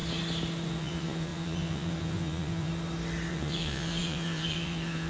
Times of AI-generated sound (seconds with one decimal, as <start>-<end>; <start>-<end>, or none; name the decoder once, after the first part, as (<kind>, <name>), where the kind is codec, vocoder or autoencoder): 0.8-2.7 (vocoder, Vocos); 3.3-5.1